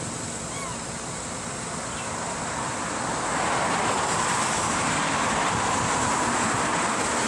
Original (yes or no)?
yes